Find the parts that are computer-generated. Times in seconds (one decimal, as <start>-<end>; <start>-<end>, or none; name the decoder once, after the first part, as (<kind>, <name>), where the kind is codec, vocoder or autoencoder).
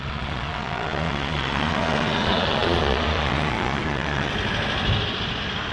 0.0-4.3 (vocoder, Vocos)